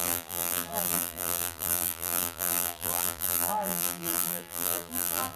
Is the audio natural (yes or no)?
no